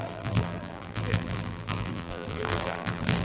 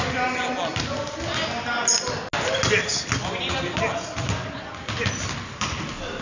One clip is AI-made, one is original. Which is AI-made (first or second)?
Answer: first